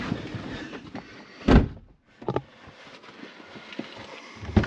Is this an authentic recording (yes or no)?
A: yes